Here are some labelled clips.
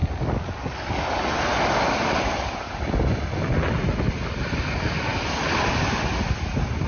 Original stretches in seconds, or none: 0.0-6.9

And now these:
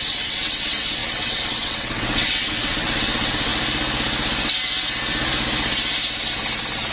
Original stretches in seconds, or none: 3.5-6.9

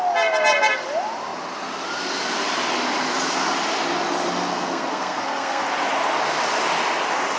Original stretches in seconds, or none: 0.0-4.5; 5.6-7.4

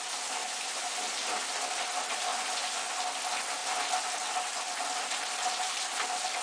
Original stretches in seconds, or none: 0.0-0.4; 1.0-2.3; 3.0-6.4

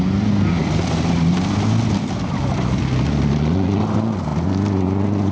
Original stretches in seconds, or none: 0.0-5.3

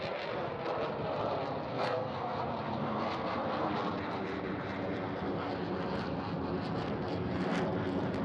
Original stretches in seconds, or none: 0.0-1.7; 2.4-2.8; 3.7-8.2

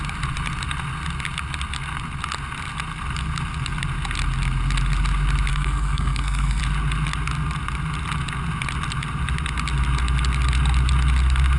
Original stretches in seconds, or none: 0.0-5.5; 6.6-11.6